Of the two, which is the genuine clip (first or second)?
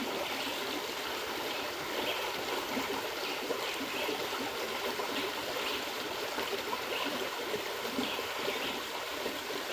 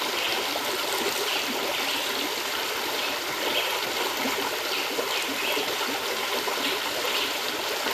second